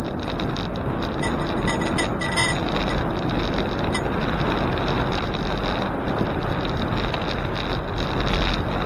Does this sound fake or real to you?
real